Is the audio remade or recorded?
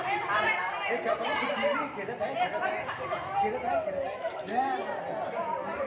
recorded